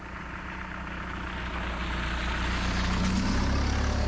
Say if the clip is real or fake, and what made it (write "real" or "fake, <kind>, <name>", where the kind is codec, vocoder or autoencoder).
real